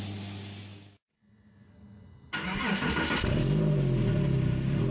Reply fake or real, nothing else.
real